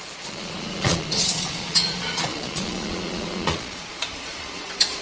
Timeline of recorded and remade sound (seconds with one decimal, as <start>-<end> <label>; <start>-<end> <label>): 0.0-5.0 remade